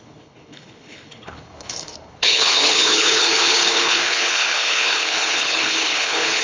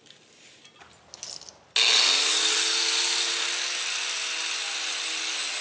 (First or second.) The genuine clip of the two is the second